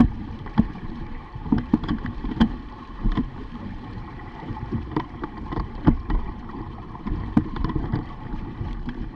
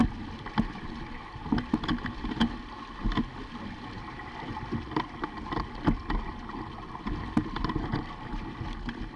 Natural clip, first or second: second